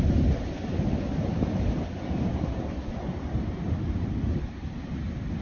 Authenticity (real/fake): real